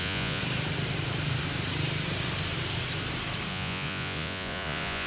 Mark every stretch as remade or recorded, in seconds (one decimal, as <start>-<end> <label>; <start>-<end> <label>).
0.0-0.4 remade; 0.4-3.5 recorded; 3.5-5.1 remade